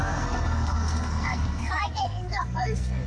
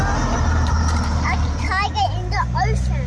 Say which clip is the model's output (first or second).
first